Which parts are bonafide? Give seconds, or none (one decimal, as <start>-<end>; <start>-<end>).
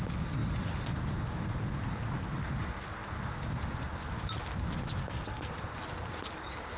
0.0-5.0; 5.5-6.8